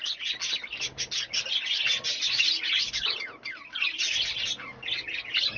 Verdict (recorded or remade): recorded